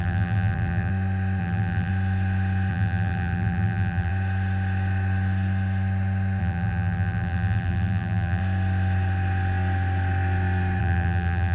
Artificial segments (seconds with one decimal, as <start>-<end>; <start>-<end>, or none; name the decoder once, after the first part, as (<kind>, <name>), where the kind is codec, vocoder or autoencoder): 0.0-0.9 (vocoder, BigVGAN v2); 1.4-1.9; 2.7-4.1; 6.4-8.4; 10.8-11.5